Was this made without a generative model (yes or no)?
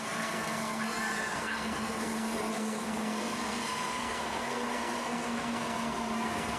no